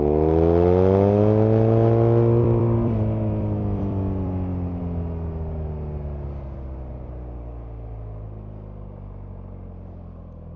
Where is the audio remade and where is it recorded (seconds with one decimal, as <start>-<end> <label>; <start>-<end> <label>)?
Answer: 0.0-2.4 recorded; 2.4-4.8 remade; 4.8-10.6 recorded